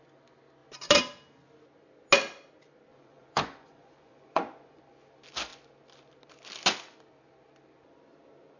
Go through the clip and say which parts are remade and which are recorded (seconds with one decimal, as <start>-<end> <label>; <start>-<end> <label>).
0.0-2.9 recorded; 2.9-4.8 remade; 4.8-8.6 recorded